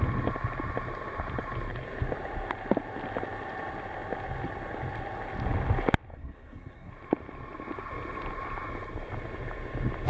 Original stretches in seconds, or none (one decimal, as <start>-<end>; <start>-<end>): 0.0-6.1; 6.9-10.1